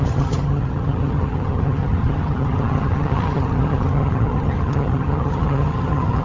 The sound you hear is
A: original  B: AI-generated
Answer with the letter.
B